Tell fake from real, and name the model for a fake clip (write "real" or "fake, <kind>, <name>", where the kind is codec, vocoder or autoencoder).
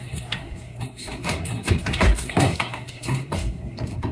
fake, codec, SNAC